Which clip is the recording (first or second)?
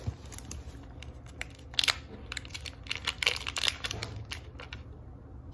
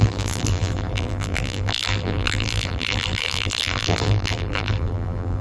first